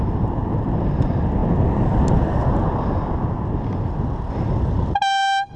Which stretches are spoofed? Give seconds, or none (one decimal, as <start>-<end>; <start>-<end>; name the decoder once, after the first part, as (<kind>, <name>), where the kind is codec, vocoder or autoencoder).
none